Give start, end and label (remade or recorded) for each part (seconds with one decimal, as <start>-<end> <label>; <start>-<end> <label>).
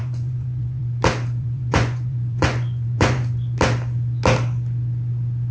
0.0-0.8 remade; 0.8-1.4 recorded; 1.4-3.2 remade; 3.2-5.5 recorded